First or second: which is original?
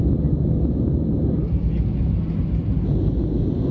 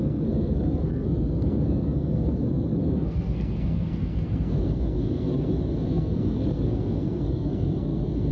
first